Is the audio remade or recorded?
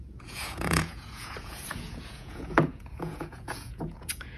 remade